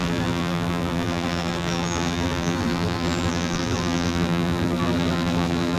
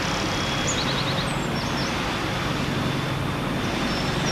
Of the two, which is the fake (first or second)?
first